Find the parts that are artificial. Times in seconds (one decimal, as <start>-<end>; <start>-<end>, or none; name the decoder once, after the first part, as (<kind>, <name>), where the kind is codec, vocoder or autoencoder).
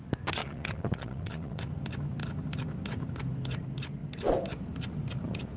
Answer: 0.4-1.6 (vocoder, Vocos)